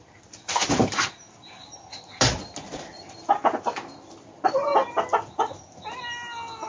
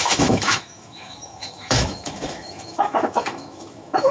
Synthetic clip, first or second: second